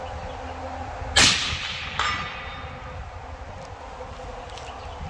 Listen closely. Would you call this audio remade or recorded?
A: recorded